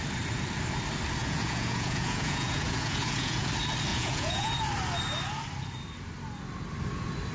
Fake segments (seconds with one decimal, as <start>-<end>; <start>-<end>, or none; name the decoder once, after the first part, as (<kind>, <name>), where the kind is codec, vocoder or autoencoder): 1.2-3.5 (vocoder, Vocos); 3.9-4.5